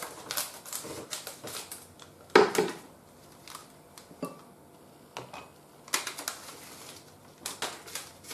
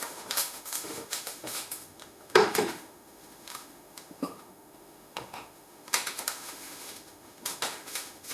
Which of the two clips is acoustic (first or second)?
first